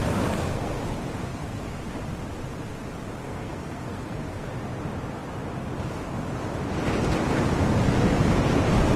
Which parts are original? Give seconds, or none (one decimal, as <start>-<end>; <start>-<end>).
0.8-1.3; 1.8-3.2; 4.5-9.0

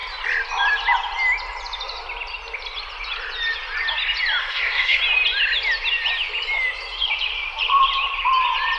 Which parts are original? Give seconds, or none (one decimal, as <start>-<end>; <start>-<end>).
0.0-4.4; 5.0-8.8